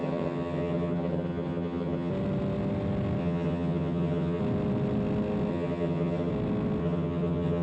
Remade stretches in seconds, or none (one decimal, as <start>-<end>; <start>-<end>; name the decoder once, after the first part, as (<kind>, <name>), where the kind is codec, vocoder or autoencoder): 0.0-2.1 (vocoder, HiFi-GAN); 3.2-4.4; 5.5-6.3; 6.8-7.6